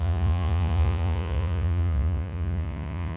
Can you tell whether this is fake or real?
fake